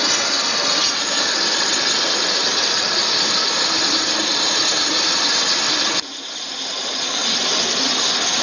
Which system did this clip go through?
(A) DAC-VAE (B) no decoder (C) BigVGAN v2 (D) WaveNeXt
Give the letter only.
B